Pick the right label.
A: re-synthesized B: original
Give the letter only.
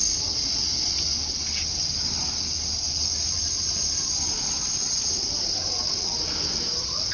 B